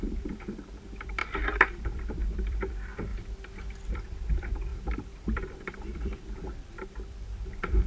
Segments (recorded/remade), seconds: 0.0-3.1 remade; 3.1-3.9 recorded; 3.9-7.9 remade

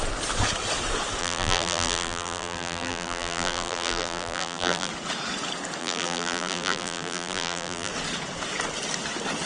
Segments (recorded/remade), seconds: 0.0-1.2 recorded; 1.2-4.9 remade; 4.9-5.8 recorded; 5.8-7.9 remade; 7.9-9.5 recorded

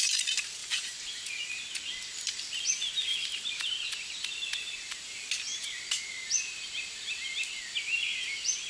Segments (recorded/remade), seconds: 0.0-0.6 recorded; 0.6-1.6 remade; 1.6-8.7 recorded

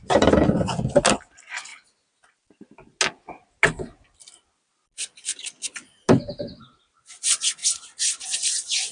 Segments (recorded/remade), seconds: 0.0-8.9 recorded

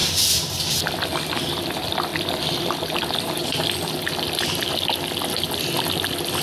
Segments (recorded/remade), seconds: 0.0-1.5 remade; 1.5-2.1 recorded; 2.1-4.2 remade; 4.2-6.4 recorded